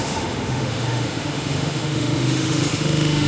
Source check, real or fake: fake